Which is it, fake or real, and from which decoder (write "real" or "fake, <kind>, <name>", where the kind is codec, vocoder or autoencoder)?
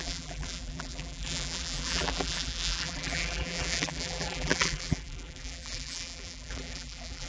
fake, vocoder, BigVGAN v2